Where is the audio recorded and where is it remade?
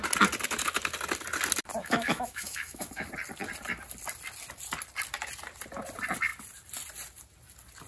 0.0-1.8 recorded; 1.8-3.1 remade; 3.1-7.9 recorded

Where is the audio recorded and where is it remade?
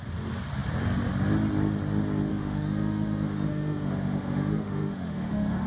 0.0-2.3 recorded; 2.3-5.7 remade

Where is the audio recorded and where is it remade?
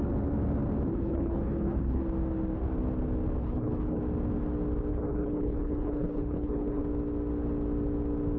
0.0-0.9 recorded; 0.9-2.0 remade; 2.0-3.4 recorded; 3.4-4.0 remade; 4.0-4.9 recorded; 4.9-6.8 remade; 6.8-8.4 recorded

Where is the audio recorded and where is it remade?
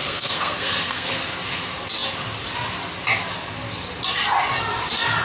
0.0-1.1 remade; 1.1-5.2 recorded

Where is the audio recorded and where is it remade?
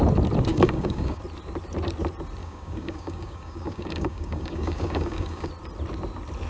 0.0-0.5 recorded; 0.5-1.2 remade; 1.2-2.4 recorded; 2.4-5.5 remade; 5.5-6.5 recorded